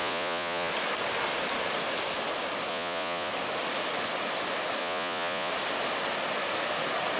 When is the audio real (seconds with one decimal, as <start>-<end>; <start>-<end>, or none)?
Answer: 0.7-2.7; 3.3-4.8; 5.5-7.2